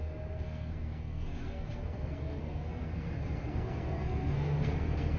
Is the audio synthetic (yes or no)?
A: yes